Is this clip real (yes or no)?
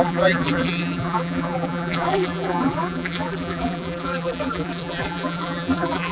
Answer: no